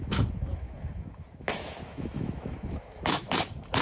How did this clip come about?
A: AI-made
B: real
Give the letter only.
A